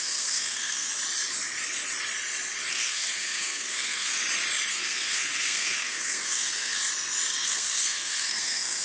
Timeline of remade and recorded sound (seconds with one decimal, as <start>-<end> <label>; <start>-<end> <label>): 0.0-0.9 remade; 0.9-2.7 recorded; 2.7-4.1 remade; 4.1-4.7 recorded; 4.7-6.8 remade; 6.8-7.3 recorded; 7.3-8.8 remade